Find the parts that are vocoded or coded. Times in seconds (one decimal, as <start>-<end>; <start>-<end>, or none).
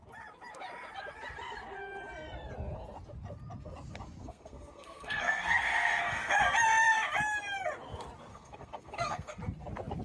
4.2-6.4; 8.3-9.4